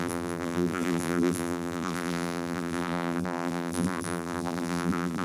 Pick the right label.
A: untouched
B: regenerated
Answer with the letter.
B